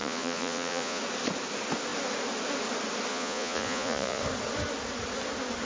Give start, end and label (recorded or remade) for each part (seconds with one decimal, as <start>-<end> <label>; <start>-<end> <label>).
0.0-1.0 remade; 1.0-3.1 recorded; 3.1-4.2 remade; 4.2-5.7 recorded